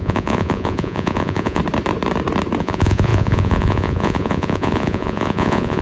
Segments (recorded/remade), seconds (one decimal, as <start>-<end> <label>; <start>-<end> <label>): 0.0-1.6 remade; 1.6-2.6 recorded; 2.6-5.8 remade